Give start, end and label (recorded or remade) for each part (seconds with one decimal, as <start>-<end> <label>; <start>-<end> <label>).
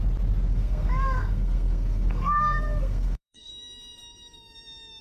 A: 0.0-0.5 recorded; 0.5-3.5 remade; 3.5-5.0 recorded